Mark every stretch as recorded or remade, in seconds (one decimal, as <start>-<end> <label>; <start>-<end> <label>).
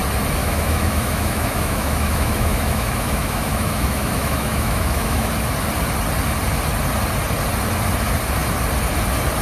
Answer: 0.0-0.4 recorded; 0.4-5.3 remade; 5.3-9.4 recorded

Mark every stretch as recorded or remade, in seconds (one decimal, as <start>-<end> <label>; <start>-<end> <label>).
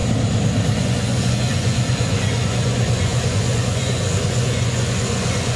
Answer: 0.0-0.8 recorded; 0.8-5.6 remade